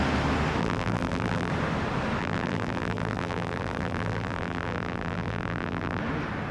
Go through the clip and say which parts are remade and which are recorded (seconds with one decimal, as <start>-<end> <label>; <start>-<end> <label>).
0.0-0.6 recorded; 0.6-1.5 remade; 1.5-2.2 recorded; 2.2-6.0 remade; 6.0-6.5 recorded